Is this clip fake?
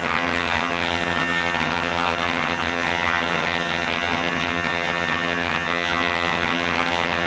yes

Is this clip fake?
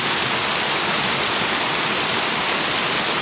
no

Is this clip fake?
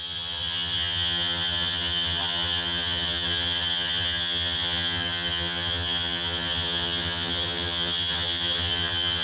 yes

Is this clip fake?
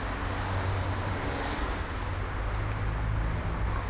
no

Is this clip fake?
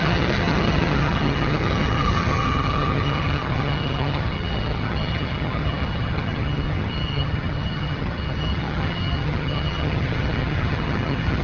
yes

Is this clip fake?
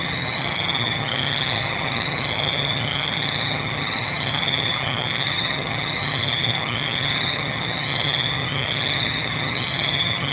yes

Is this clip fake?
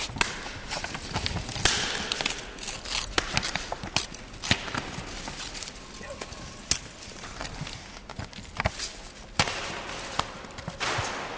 no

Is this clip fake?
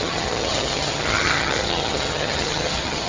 yes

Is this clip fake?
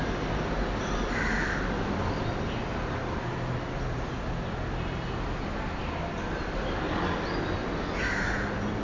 no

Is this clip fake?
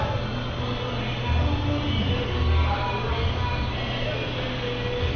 no